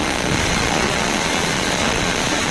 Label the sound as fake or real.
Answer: fake